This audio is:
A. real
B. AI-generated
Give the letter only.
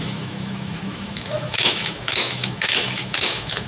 B